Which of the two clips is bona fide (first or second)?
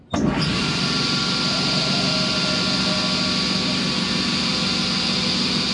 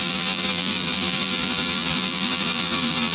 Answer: first